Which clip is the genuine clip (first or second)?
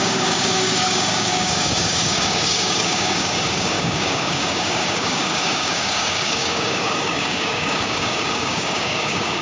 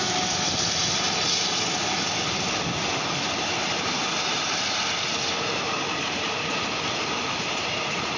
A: second